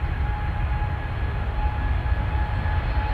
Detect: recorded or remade recorded